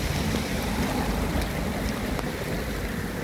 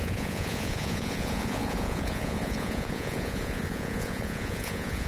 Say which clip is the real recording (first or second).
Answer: first